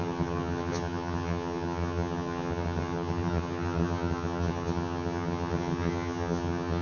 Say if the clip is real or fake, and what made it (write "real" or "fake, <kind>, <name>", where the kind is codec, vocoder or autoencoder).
fake, vocoder, HiFi-GAN